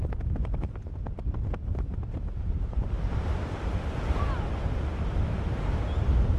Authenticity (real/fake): real